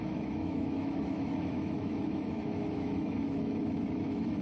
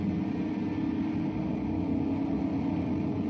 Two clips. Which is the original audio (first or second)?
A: second